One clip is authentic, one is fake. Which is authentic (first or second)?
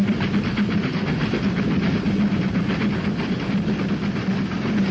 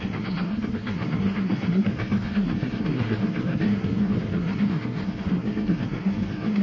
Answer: first